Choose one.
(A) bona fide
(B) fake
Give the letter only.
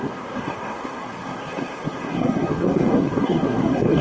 B